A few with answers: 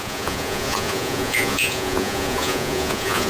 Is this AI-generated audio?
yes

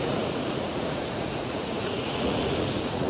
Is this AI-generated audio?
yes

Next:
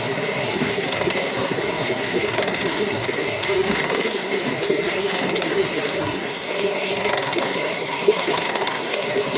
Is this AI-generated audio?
yes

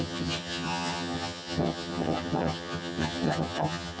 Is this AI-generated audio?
yes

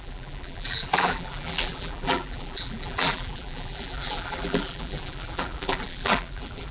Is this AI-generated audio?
yes